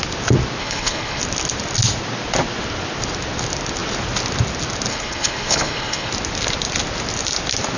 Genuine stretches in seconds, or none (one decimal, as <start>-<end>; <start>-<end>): 0.0-0.6; 1.2-4.9; 6.1-7.8